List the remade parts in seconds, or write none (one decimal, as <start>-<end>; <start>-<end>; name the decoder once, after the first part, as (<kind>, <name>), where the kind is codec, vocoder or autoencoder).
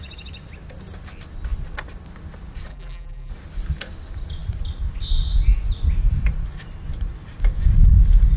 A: 2.7-3.3 (vocoder, BigVGAN v2)